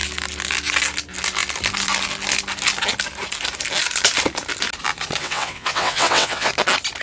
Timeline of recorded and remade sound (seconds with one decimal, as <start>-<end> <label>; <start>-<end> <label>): 0.0-5.2 recorded; 5.2-6.5 remade; 6.5-7.0 recorded